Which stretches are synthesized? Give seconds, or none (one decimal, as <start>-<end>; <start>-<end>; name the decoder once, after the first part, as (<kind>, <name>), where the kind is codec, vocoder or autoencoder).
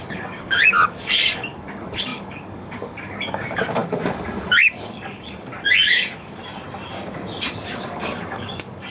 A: 0.0-6.4 (codec, DAC); 7.5-8.9